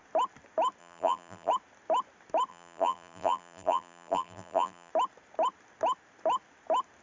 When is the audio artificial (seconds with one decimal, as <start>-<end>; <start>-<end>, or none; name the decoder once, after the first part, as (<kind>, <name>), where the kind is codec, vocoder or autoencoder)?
0.8-1.5 (vocoder, BigVGAN v2); 2.5-4.9